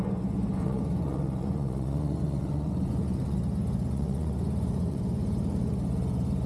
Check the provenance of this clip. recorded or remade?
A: remade